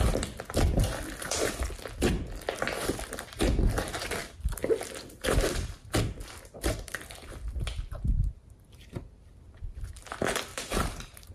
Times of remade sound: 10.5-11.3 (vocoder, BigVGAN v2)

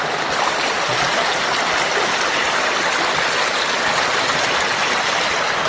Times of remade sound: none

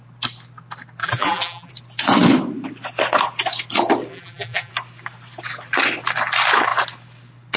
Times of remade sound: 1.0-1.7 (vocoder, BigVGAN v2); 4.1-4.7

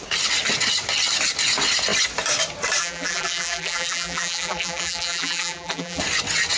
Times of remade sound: 2.8-6.0 (vocoder, BigVGAN v2)

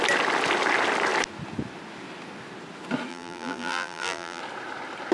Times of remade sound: 3.1-4.4 (vocoder, BigVGAN v2)

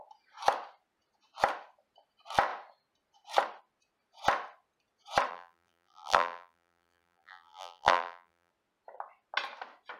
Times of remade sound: 5.3-8.5 (vocoder, BigVGAN v2)

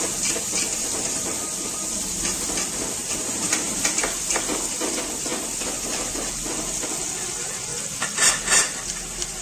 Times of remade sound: 3.0-4.4 (vocoder, BigVGAN v2)

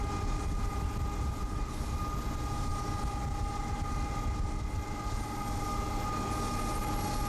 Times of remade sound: none